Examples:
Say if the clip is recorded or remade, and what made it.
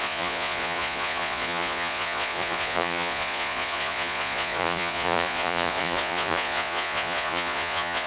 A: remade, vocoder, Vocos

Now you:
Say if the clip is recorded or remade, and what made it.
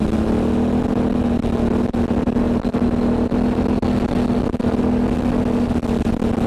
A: recorded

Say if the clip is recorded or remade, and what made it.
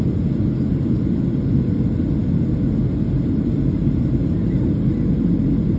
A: recorded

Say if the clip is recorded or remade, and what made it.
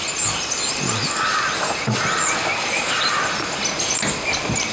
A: recorded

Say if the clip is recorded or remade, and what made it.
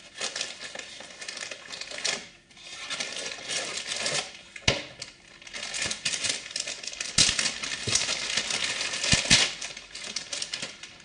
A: recorded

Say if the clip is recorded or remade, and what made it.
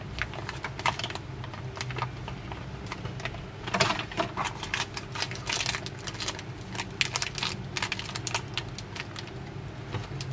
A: recorded